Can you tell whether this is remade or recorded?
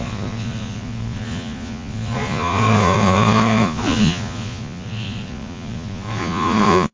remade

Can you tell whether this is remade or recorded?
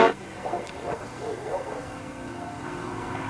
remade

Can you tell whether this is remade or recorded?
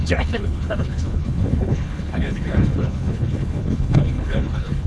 remade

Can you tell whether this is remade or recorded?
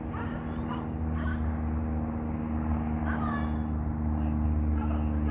recorded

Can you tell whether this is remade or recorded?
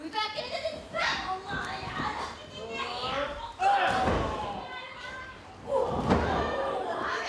recorded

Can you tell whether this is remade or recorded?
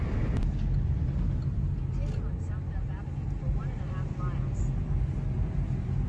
recorded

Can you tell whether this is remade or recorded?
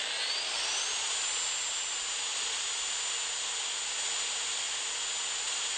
recorded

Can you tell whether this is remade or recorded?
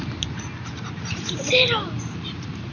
remade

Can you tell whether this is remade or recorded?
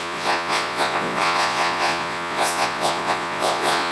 remade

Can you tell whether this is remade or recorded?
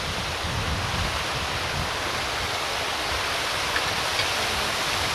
recorded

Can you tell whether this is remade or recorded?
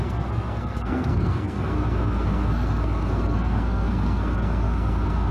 remade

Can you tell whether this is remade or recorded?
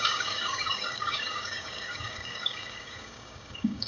remade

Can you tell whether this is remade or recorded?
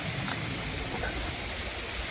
recorded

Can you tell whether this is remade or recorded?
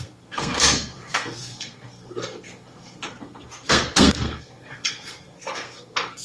remade